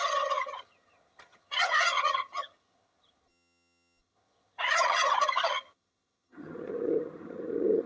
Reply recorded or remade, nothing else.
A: remade